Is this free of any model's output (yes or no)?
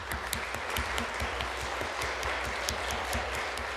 yes